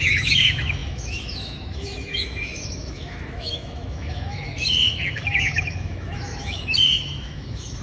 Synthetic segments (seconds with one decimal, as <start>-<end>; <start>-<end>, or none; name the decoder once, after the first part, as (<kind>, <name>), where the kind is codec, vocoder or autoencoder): 0.0-7.8 (autoencoder, DAC-VAE)